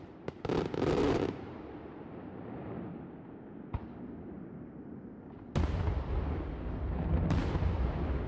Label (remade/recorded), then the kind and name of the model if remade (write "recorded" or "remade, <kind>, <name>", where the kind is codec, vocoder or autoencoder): recorded